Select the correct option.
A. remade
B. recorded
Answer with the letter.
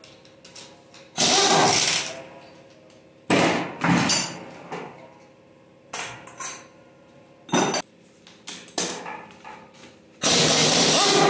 B